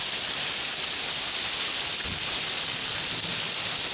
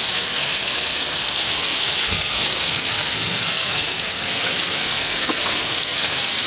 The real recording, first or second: first